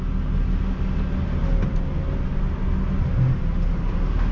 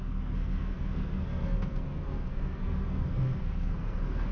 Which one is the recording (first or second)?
first